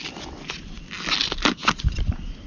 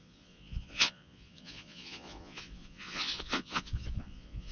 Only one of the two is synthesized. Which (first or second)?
second